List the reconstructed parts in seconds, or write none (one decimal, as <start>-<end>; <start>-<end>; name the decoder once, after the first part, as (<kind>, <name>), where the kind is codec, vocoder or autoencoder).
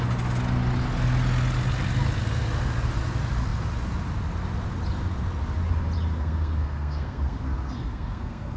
6.2-8.6 (codec, SNAC)